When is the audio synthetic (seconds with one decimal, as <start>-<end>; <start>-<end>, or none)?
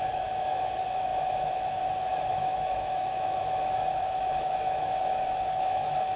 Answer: 0.0-6.2